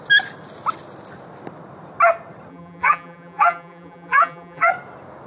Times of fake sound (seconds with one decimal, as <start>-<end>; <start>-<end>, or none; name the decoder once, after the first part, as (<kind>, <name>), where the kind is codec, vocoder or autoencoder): 2.5-4.7 (vocoder, BigVGAN v2)